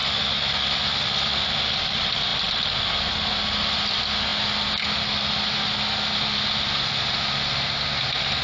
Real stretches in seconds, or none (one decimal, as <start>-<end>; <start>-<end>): 0.0-8.4

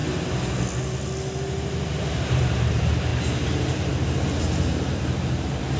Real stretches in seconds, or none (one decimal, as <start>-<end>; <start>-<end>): 0.0-1.4

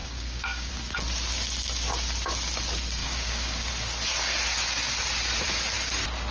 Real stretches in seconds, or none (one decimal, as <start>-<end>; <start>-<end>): 0.7-3.0; 3.7-6.3

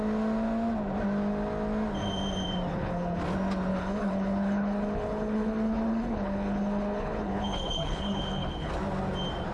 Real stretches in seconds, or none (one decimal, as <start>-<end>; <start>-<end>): 0.0-2.7; 3.2-3.7; 8.7-9.5

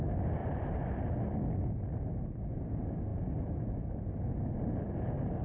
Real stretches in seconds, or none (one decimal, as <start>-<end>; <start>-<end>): 0.0-0.4; 0.9-5.4